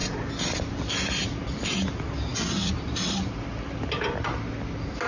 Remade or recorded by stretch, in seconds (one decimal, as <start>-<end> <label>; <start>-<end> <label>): 0.0-5.1 recorded